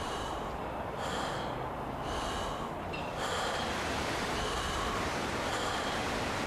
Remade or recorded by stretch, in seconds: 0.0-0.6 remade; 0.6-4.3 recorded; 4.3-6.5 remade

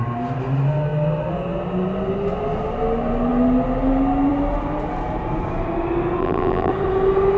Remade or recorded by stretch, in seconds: 0.0-6.2 recorded; 6.2-6.7 remade; 6.7-7.4 recorded